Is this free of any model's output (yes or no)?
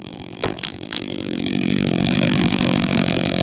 no